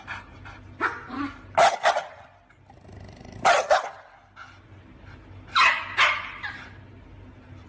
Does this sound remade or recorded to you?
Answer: recorded